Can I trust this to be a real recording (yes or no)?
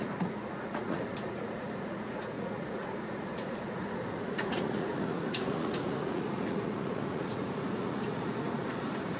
no